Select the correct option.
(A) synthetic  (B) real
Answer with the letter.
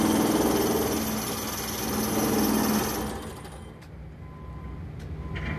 B